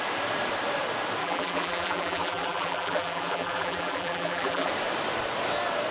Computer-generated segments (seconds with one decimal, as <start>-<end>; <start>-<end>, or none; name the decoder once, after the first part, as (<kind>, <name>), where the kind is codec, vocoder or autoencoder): 1.2-4.7 (vocoder, BigVGAN v2)